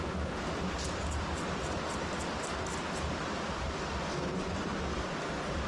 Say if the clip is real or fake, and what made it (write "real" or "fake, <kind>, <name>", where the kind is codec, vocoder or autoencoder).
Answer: real